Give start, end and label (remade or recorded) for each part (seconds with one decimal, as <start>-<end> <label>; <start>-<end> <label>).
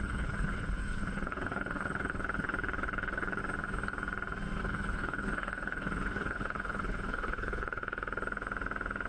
0.0-3.4 remade; 3.4-4.6 recorded; 4.6-7.8 remade; 7.8-9.1 recorded